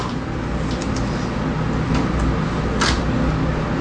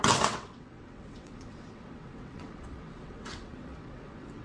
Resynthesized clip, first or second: second